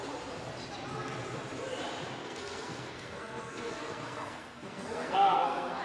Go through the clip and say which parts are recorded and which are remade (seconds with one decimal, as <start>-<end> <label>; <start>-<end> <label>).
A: 0.0-2.2 recorded; 2.2-5.8 remade